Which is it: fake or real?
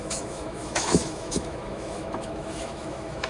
fake